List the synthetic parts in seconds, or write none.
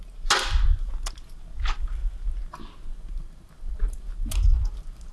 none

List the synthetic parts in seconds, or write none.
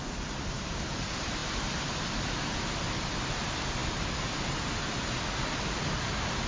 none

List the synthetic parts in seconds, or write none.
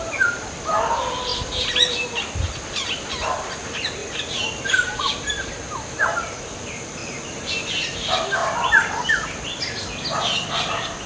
0.0-4.0; 4.7-7.0; 7.7-8.4; 10.6-11.1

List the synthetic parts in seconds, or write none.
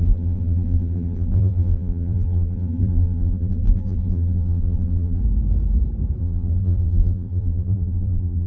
0.0-5.2; 6.2-8.5